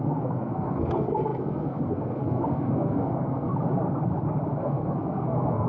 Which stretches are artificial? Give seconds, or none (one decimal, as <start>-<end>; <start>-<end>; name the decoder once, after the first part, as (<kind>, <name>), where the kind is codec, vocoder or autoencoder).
0.0-3.5 (codec, SNAC); 4.6-5.7